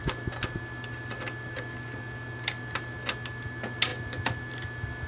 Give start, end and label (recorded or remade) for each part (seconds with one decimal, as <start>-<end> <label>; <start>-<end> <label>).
0.0-5.1 recorded